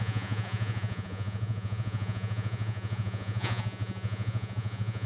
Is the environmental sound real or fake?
fake